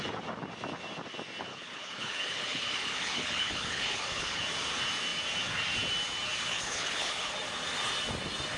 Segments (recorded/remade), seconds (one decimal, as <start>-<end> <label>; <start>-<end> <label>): 0.0-1.5 recorded; 1.5-4.4 remade; 4.4-6.5 recorded; 6.5-7.3 remade; 7.3-8.6 recorded